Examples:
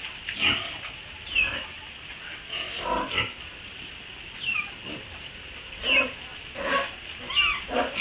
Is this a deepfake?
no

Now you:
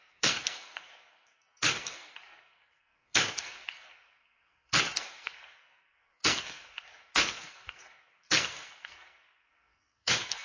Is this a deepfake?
yes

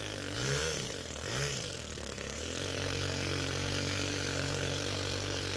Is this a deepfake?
yes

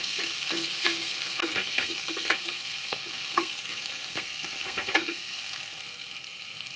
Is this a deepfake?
yes